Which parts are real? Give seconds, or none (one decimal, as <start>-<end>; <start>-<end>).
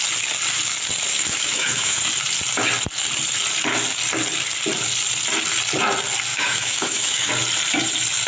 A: 0.0-1.1; 2.0-6.3; 7.3-8.3